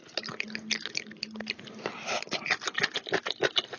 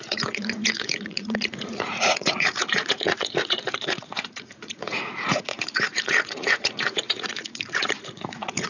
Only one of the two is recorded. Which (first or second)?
first